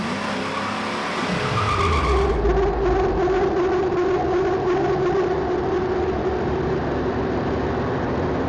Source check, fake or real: real